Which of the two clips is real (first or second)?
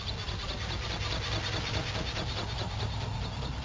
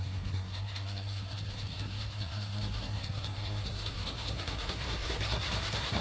first